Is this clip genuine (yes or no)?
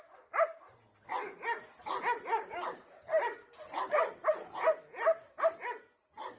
yes